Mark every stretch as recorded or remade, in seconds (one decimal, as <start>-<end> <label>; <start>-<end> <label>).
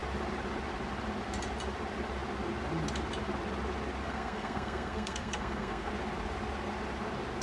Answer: 0.0-4.0 recorded; 4.0-5.9 remade; 5.9-7.4 recorded